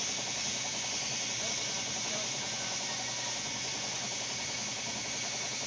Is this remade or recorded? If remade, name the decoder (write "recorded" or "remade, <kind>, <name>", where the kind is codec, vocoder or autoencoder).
remade, vocoder, Vocos